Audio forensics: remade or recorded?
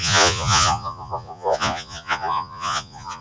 remade